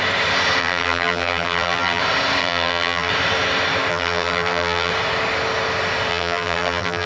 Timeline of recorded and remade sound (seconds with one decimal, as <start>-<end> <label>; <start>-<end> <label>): 0.0-0.6 recorded; 0.6-2.0 remade; 2.0-2.4 recorded; 2.4-3.1 remade; 3.1-3.9 recorded; 3.9-4.9 remade; 4.9-6.1 recorded; 6.1-7.1 remade